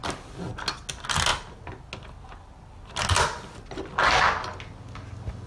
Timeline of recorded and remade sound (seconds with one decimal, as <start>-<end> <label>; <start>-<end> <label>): 0.0-5.5 recorded